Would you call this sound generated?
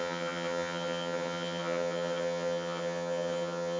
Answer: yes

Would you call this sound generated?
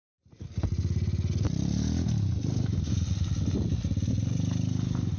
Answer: no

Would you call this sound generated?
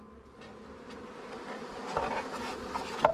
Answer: no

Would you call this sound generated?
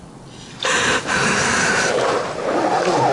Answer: no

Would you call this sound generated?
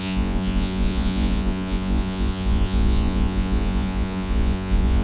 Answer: yes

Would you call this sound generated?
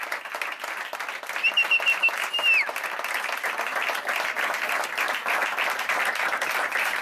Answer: no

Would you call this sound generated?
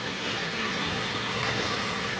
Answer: yes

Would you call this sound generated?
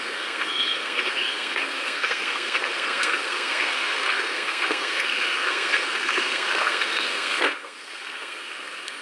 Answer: yes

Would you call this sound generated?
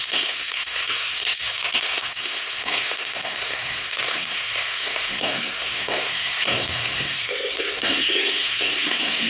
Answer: yes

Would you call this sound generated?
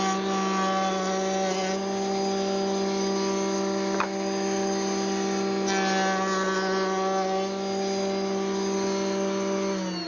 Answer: no